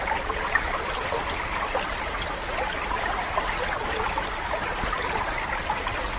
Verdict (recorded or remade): recorded